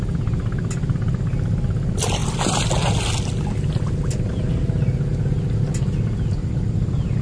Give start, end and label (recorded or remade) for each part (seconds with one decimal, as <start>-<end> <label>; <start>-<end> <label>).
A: 0.0-7.2 recorded

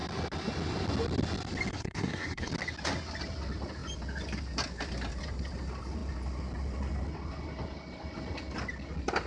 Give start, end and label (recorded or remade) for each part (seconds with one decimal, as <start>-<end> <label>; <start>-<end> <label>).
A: 0.0-1.7 recorded; 1.7-2.5 remade; 2.5-9.3 recorded

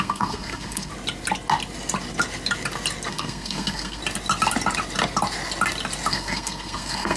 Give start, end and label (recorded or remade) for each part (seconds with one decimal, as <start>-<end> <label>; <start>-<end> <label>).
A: 0.0-0.9 remade; 0.9-3.1 recorded; 3.1-4.0 remade; 4.0-6.1 recorded; 6.1-7.2 remade

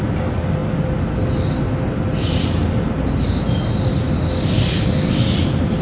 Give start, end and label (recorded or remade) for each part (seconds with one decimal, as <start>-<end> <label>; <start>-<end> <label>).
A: 0.0-5.8 recorded

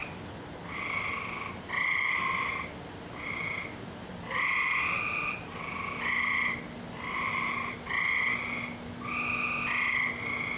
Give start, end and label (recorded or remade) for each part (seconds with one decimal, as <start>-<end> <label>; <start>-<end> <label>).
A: 0.0-10.6 recorded

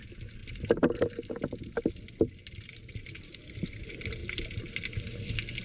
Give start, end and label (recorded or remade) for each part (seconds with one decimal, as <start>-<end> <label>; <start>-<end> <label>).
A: 0.0-5.6 recorded